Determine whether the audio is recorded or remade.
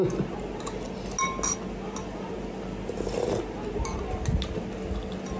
recorded